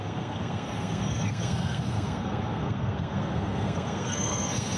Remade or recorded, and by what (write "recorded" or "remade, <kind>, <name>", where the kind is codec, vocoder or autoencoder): remade, codec, SNAC